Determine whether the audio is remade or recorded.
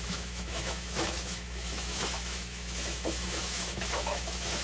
remade